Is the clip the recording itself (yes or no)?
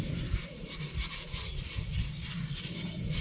no